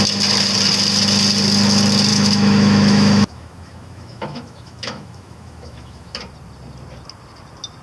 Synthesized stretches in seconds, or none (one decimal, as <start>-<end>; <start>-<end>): 2.1-6.2